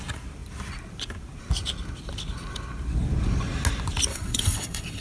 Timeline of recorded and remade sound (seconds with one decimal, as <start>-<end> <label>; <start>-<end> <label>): 0.0-4.1 recorded; 4.1-5.0 remade